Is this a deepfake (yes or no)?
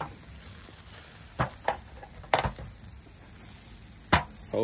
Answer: no